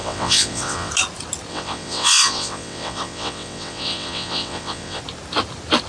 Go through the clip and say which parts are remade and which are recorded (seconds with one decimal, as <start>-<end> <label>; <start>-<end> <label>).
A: 0.0-0.9 remade; 0.9-1.5 recorded; 1.5-5.0 remade; 5.0-5.9 recorded